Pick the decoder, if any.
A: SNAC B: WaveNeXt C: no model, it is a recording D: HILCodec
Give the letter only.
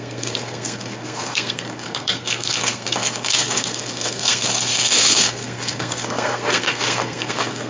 A